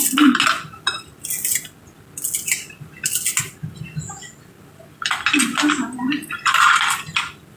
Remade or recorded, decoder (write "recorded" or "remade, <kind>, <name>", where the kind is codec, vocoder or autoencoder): recorded